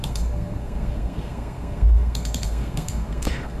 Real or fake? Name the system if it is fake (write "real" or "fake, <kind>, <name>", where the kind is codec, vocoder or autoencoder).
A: fake, codec, SNAC